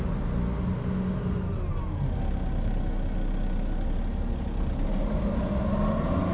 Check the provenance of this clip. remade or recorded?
recorded